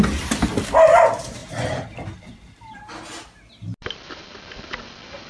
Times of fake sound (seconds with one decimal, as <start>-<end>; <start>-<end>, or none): none